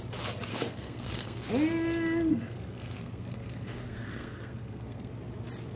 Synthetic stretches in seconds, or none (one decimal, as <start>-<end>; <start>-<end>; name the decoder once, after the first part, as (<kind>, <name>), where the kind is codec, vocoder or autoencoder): 0.5-1.5 (codec, SNAC); 2.3-5.1